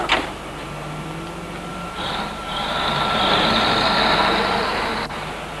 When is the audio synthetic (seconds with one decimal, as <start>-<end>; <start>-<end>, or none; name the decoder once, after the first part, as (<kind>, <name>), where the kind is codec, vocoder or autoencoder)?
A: 1.7-5.1 (vocoder, BigVGAN v2)